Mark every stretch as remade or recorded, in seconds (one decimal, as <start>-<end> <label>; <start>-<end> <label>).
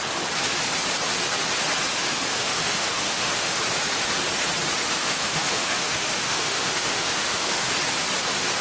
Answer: 0.0-1.9 recorded; 1.9-3.6 remade; 3.6-4.8 recorded; 4.8-7.7 remade; 7.7-8.6 recorded